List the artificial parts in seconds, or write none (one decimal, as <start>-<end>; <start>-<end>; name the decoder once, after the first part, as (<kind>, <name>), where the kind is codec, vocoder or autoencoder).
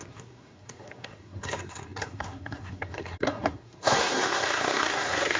0.0-5.4 (codec, SNAC)